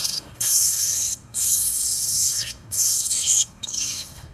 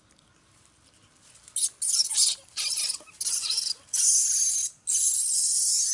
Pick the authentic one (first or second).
second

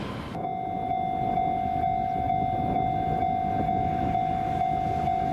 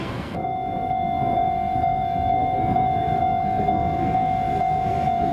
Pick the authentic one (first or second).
first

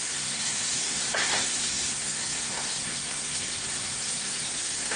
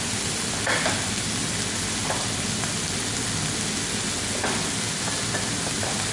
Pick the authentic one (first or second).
second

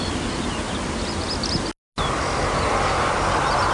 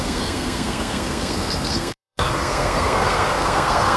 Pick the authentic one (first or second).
first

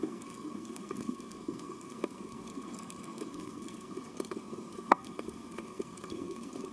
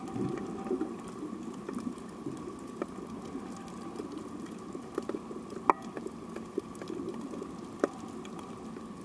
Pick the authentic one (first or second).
second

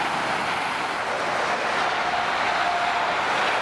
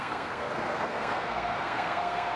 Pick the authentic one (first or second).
first